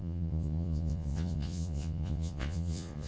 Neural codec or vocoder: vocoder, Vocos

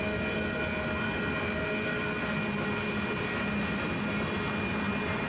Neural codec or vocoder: none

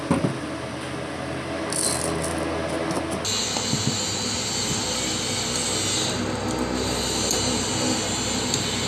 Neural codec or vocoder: none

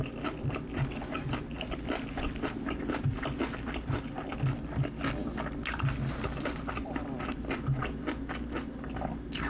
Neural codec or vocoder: none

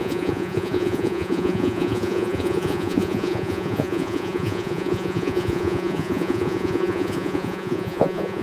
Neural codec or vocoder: vocoder, Vocos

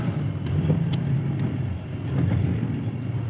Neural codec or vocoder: none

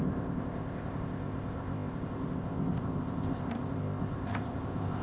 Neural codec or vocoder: codec, ZipCodec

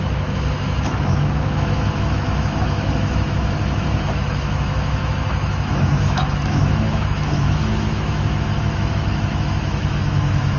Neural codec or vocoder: autoencoder, DAC-VAE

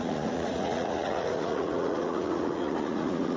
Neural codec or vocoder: vocoder, Vocos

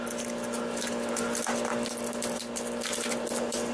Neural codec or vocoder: none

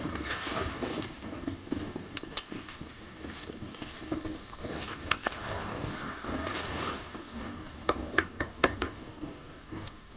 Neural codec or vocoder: codec, DAC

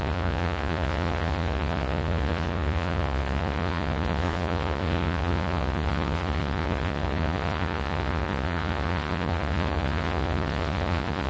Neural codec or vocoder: vocoder, Vocos